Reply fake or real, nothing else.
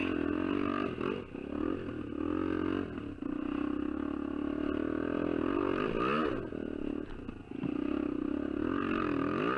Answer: real